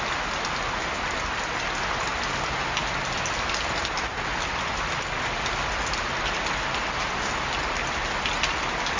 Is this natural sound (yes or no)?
yes